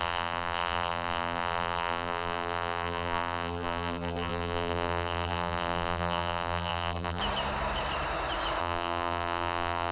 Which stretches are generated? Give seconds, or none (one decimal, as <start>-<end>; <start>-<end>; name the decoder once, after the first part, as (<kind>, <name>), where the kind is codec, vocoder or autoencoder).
0.0-7.2 (vocoder, BigVGAN v2); 8.6-9.9